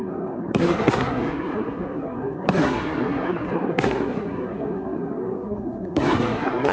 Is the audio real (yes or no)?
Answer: no